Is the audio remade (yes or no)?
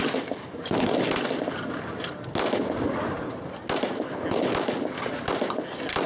no